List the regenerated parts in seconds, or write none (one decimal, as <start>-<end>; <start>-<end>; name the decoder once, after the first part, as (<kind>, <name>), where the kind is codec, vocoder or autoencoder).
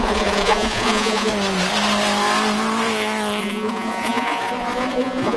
0.0-1.3 (vocoder, Vocos); 3.4-5.4